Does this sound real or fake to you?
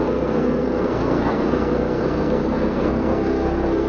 fake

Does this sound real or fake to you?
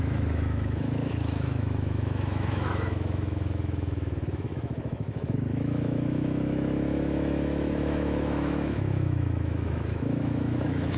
fake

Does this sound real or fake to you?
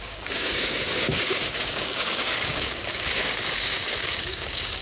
fake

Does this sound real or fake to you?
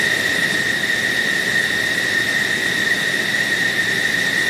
real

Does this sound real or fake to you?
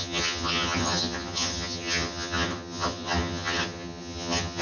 fake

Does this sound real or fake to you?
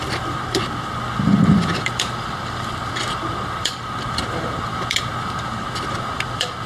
fake